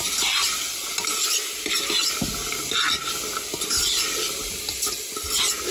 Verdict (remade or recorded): recorded